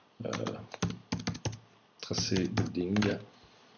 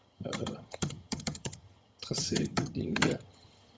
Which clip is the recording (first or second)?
first